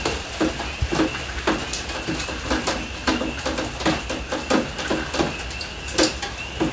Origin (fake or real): real